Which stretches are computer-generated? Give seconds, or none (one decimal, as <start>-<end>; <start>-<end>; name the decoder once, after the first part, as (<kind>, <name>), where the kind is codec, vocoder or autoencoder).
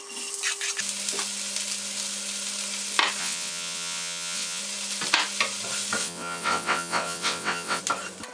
3.2-4.6 (vocoder, WaveNeXt); 6.0-7.8